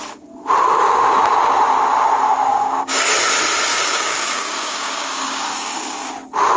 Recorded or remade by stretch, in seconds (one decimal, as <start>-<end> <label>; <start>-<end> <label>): 0.0-2.5 recorded; 2.5-3.1 remade; 3.1-3.7 recorded; 3.7-6.1 remade; 6.1-6.6 recorded